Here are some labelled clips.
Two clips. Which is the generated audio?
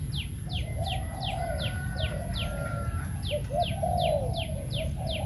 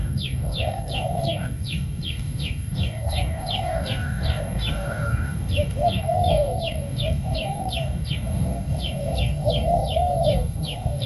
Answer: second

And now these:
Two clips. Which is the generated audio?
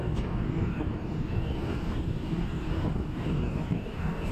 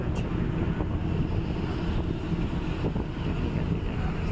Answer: first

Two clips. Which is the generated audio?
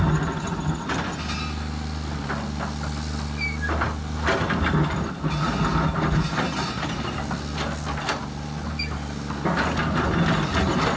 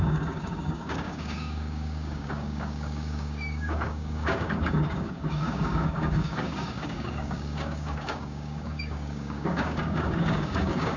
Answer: second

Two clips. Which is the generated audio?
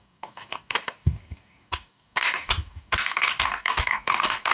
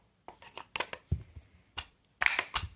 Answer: first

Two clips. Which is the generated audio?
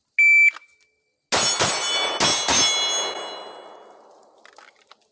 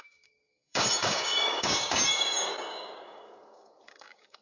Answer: second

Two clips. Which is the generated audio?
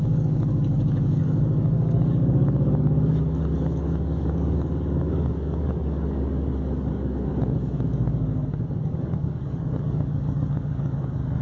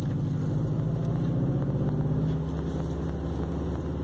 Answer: first